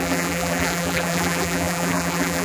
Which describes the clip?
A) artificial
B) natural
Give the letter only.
A